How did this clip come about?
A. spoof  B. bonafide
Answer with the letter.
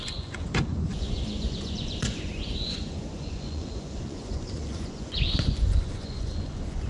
A